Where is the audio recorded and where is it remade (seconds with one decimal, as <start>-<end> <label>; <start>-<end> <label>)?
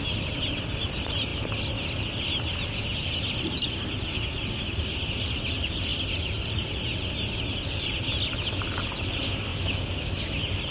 0.0-9.5 recorded; 9.5-10.1 remade; 10.1-10.7 recorded